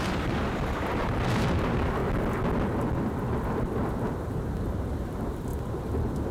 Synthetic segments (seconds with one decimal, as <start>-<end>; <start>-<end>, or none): 0.0-2.0; 3.5-5.5